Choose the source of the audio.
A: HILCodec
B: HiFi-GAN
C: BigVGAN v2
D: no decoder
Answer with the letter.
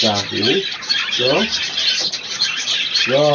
D